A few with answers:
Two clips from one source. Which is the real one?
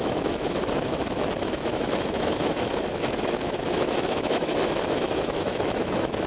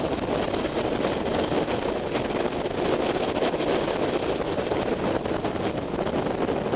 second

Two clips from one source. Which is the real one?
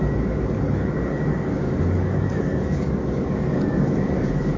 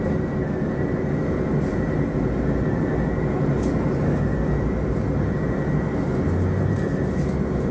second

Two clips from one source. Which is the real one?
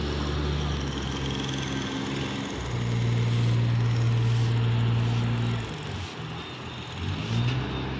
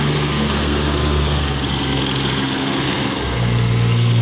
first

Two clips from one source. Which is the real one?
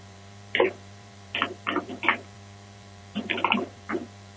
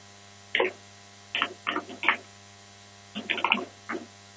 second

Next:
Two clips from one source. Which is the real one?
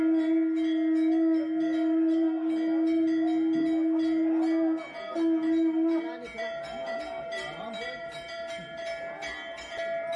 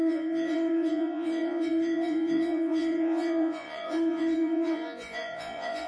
first